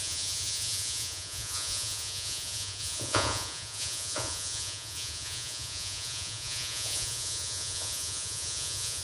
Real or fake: fake